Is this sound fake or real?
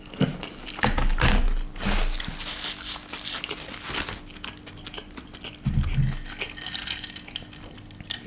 real